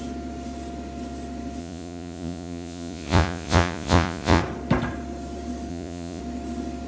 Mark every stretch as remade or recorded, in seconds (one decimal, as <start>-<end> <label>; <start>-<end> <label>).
0.0-1.6 recorded; 1.6-4.4 remade; 4.4-5.7 recorded; 5.7-6.2 remade; 6.2-6.9 recorded